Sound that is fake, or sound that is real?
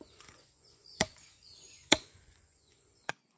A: fake